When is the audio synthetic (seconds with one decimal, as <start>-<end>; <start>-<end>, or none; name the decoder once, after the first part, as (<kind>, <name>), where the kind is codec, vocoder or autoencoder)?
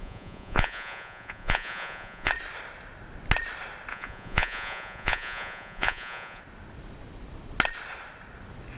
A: 0.0-2.3 (vocoder, Vocos); 3.9-6.4